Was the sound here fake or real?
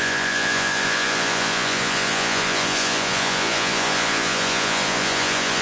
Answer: fake